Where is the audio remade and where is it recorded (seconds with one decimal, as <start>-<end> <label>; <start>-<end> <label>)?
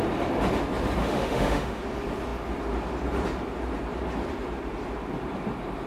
0.0-1.0 recorded; 1.0-1.8 remade; 1.8-5.9 recorded